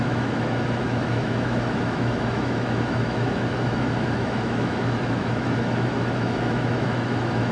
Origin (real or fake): fake